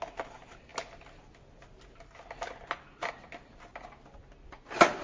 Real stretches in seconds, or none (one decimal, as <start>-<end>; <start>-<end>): 0.0-5.0